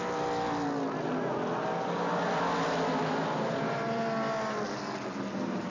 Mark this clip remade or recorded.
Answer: recorded